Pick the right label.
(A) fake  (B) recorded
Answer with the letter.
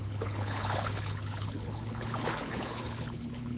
A